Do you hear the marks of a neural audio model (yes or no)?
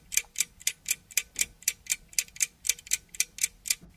no